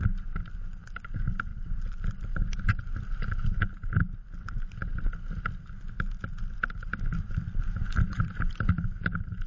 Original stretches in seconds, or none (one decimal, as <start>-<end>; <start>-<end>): 0.0-1.5; 2.8-9.5